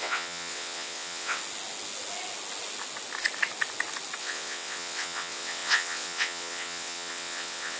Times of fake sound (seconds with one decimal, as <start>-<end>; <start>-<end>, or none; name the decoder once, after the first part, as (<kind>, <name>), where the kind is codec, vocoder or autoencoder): 0.0-1.4 (vocoder, WaveNeXt); 4.2-7.8

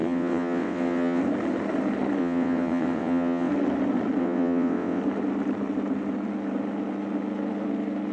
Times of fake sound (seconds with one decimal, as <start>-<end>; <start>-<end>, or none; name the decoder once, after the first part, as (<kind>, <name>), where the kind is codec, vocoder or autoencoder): 0.0-1.2 (vocoder, WaveNeXt); 2.2-3.5; 4.2-5.0

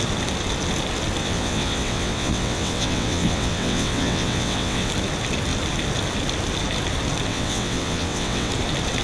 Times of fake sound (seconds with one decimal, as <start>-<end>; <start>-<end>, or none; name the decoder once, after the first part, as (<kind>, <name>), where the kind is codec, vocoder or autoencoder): 1.2-4.9 (vocoder, WaveNeXt); 7.3-8.5

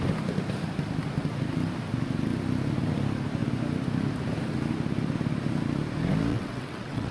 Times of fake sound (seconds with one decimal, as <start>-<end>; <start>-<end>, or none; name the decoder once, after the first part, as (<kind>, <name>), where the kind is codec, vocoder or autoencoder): 6.3-7.1 (vocoder, WaveNeXt)

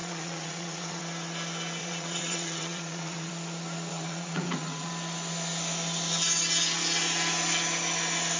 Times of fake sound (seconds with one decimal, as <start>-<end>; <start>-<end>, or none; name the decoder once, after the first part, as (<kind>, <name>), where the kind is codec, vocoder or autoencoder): 0.0-1.0 (vocoder, WaveNeXt); 1.8-3.3; 3.9-4.9

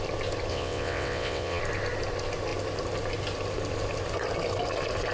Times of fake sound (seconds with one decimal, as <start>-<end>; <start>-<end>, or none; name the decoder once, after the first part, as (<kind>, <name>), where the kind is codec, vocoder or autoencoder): 0.5-1.6 (vocoder, WaveNeXt)

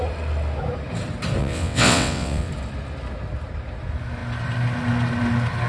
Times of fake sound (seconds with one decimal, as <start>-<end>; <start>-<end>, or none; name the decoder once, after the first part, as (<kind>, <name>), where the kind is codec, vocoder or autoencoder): 1.4-2.5 (vocoder, WaveNeXt)

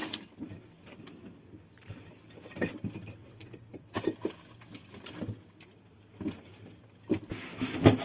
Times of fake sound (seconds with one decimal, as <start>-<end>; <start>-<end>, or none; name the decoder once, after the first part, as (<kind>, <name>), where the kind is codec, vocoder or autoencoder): 3.2-3.9 (vocoder, WaveNeXt)